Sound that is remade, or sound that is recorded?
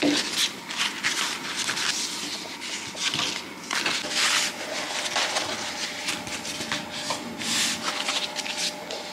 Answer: recorded